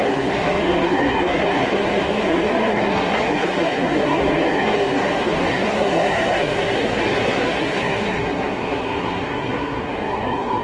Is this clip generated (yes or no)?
yes